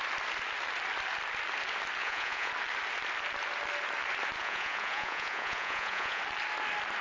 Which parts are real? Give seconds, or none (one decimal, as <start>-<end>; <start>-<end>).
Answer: 0.0-2.0; 2.5-4.4; 6.2-7.0

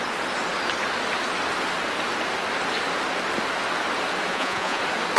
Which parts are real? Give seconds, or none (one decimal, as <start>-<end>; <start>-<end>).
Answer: 0.0-4.3; 4.8-5.2